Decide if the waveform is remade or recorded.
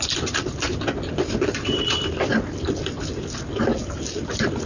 recorded